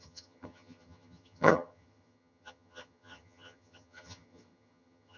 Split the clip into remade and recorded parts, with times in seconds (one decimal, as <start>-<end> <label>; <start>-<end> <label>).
0.0-5.2 remade